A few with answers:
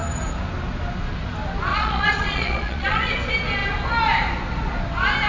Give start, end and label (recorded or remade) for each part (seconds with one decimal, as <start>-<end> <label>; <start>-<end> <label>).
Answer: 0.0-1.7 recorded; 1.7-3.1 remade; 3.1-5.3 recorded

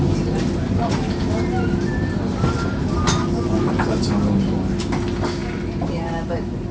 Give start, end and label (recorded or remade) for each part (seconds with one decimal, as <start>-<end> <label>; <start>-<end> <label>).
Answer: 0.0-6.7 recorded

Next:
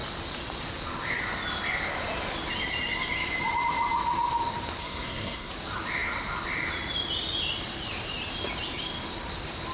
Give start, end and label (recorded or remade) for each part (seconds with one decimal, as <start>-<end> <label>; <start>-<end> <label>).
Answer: 0.0-4.8 recorded; 4.8-5.5 remade; 5.5-9.7 recorded